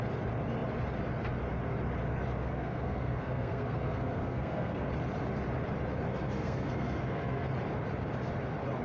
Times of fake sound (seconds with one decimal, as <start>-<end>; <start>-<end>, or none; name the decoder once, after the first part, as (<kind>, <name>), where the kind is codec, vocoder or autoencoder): 2.4-4.9 (codec, SNAC); 6.1-7.5